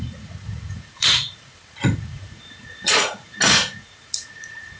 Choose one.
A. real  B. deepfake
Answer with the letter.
B